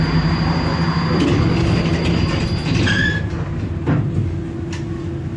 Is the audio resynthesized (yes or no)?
no